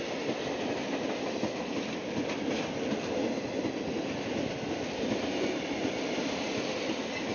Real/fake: real